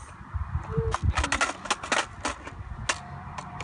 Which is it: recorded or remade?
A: recorded